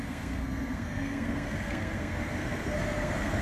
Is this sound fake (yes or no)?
yes